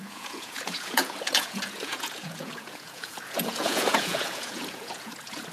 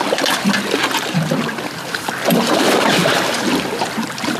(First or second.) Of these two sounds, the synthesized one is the first